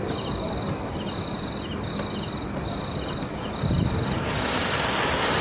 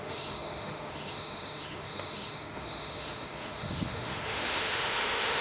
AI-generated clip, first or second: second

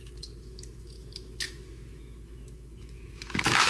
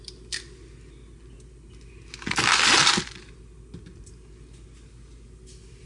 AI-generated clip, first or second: first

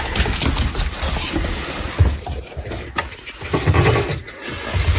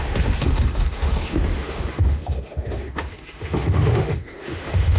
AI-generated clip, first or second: second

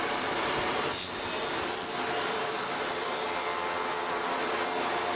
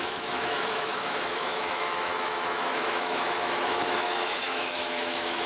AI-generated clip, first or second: second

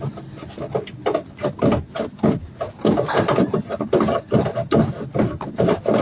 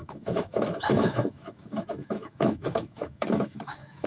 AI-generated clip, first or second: second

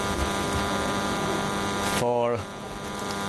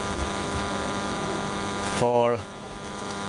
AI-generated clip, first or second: second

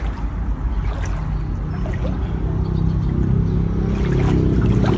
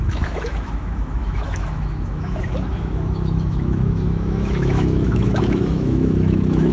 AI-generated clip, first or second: second